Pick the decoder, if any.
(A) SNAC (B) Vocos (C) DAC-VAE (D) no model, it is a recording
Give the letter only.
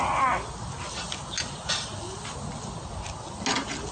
D